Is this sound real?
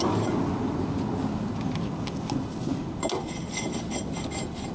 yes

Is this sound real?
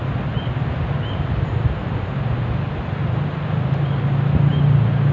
yes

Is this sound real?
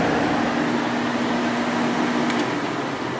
yes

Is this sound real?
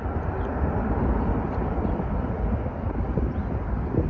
yes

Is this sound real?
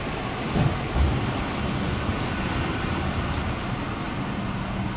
yes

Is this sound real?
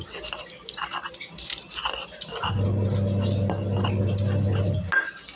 yes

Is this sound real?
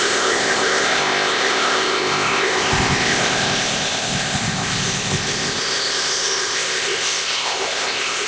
no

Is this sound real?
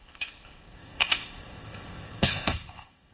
no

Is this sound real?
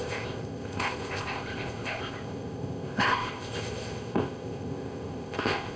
no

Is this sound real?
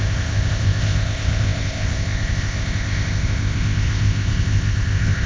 no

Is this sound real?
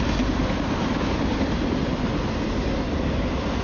yes